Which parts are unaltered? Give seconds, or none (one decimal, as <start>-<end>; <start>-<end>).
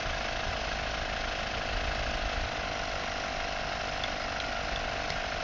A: 0.0-5.4